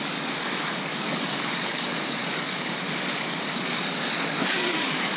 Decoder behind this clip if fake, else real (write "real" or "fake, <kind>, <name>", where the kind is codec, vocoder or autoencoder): fake, codec, DAC